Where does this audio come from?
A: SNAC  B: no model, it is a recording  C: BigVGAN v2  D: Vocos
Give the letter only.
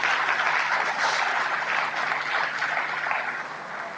B